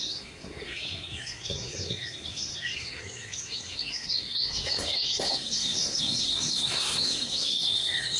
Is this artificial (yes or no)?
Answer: yes